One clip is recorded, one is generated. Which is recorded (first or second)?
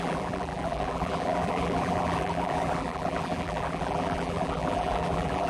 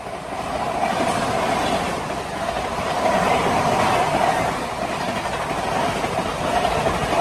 second